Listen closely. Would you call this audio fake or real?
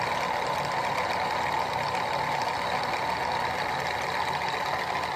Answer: real